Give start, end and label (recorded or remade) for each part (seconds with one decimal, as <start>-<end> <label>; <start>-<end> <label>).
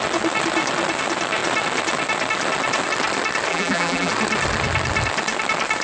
0.0-3.5 recorded; 3.5-4.1 remade; 4.1-5.8 recorded